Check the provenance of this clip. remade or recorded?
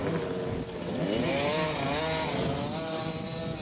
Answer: recorded